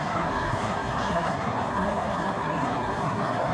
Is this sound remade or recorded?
remade